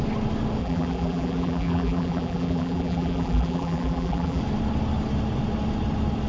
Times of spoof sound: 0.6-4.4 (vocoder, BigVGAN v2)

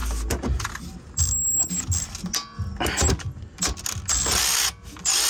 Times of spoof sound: none

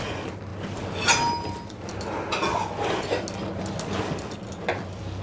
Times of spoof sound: none

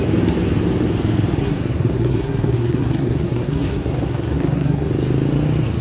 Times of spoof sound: 1.4-4.9 (codec, SNAC)

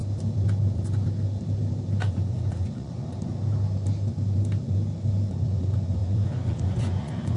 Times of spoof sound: 2.1-3.3 (vocoder, Vocos); 5.3-7.4